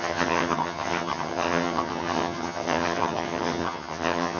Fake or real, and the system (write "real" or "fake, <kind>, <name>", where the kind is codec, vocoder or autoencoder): fake, vocoder, HiFi-GAN